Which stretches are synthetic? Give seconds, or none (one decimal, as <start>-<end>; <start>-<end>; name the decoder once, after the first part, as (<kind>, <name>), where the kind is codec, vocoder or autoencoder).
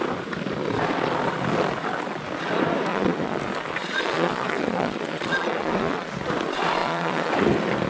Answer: 2.9-3.4 (vocoder, Vocos); 3.8-6.1; 6.8-7.3